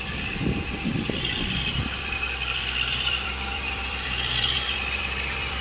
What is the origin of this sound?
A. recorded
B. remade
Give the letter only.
B